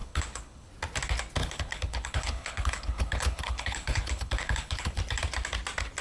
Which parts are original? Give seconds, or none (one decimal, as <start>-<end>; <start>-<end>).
0.7-1.4; 5.0-6.0